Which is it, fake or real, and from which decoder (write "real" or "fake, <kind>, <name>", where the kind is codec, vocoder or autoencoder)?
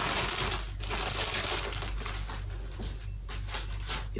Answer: real